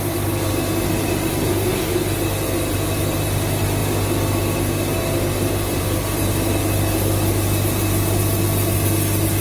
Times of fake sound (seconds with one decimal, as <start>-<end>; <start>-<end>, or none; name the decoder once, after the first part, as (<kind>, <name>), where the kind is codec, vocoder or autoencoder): none